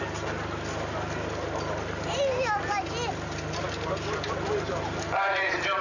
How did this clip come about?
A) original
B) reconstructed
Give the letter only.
A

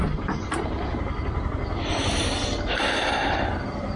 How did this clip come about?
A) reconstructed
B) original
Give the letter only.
B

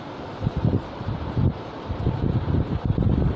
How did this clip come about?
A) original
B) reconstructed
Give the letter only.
B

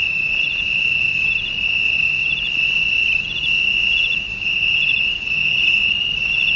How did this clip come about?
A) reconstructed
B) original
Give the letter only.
B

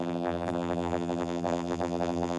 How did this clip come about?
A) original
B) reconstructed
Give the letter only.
B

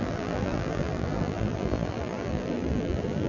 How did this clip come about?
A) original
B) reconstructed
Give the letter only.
B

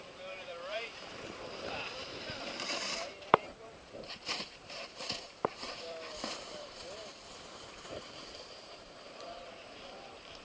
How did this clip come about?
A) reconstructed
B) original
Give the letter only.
A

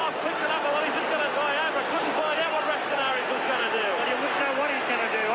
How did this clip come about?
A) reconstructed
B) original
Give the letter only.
B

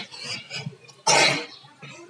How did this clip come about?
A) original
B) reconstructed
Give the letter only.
A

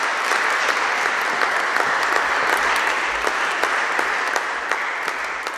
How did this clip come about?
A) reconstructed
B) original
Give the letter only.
B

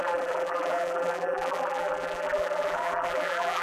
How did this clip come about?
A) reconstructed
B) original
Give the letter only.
A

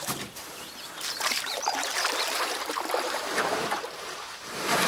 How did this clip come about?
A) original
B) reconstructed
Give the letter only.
B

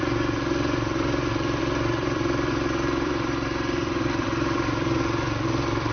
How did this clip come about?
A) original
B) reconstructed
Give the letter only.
B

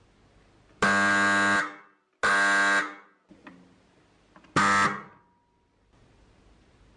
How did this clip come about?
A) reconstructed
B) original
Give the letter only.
B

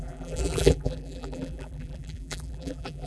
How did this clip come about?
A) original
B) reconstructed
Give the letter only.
B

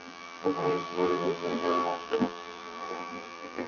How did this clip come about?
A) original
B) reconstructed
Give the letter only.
B